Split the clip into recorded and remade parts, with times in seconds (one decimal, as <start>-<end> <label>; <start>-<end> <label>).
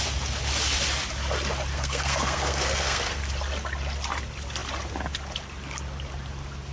0.0-1.7 recorded; 1.7-3.2 remade; 3.2-6.7 recorded